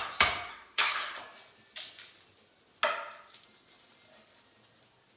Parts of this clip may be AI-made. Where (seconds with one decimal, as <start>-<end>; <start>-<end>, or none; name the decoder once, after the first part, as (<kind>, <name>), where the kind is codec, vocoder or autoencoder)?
0.5-1.2 (codec, SNAC)